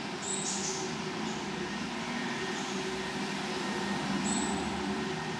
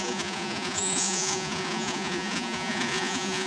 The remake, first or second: second